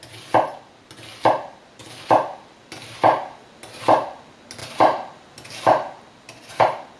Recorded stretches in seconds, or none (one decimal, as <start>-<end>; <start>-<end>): 0.0-7.0